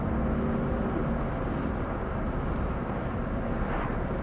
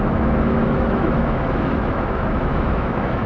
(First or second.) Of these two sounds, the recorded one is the first